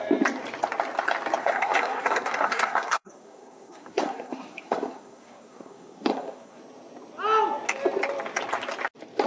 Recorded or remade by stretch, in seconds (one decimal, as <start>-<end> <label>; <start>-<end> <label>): 0.0-1.4 recorded; 1.4-6.6 remade; 6.6-9.3 recorded